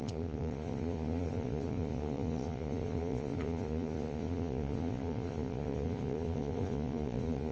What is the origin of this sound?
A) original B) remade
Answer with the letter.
B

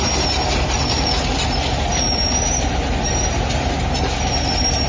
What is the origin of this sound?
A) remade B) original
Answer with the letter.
B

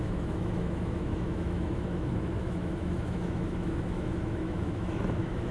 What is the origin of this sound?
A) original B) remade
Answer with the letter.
B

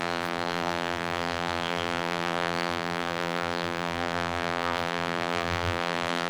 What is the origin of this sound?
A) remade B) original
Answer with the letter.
A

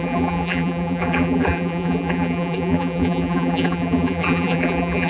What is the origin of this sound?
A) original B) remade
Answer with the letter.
B